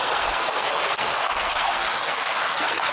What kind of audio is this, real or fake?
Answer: fake